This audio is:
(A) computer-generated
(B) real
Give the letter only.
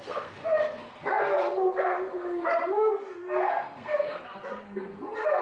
A